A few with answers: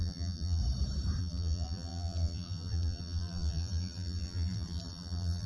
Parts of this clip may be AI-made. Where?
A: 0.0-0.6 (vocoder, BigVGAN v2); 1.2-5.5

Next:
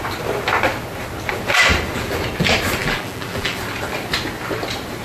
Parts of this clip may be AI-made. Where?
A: 2.8-3.6 (vocoder, BigVGAN v2)